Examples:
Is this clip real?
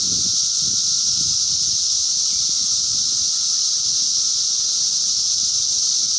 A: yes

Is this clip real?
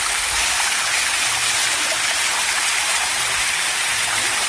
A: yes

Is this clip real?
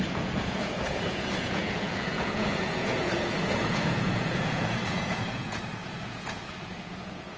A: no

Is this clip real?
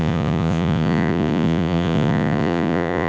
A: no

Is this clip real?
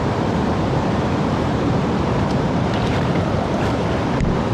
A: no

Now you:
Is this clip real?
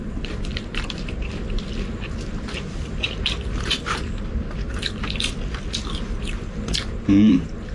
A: no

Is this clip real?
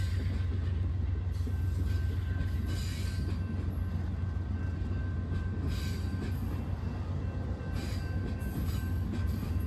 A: yes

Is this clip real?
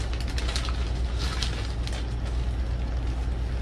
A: yes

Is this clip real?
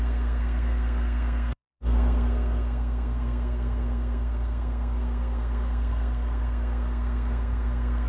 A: no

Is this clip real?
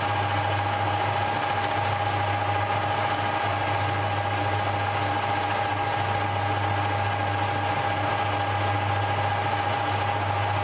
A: yes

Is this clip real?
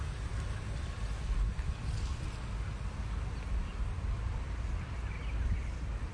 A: yes